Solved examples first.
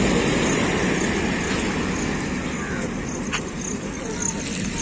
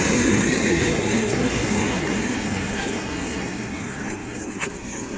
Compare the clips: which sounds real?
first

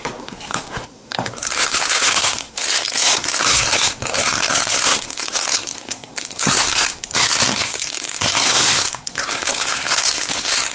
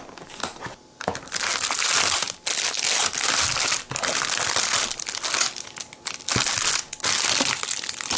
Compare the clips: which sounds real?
second